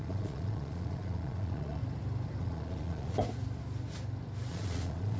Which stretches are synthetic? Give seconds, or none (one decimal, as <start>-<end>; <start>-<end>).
0.0-1.8; 2.4-3.2; 4.5-5.2

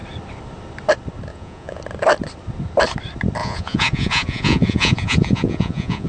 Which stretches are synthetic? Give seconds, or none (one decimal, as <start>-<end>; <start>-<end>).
1.3-1.8; 3.4-6.1

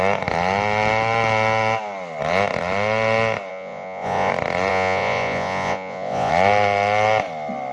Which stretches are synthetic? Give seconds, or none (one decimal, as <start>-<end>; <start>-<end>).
3.5-4.3; 4.7-6.3